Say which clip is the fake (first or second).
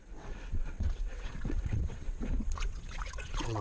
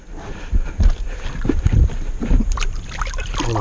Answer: first